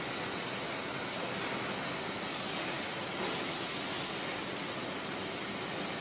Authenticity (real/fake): real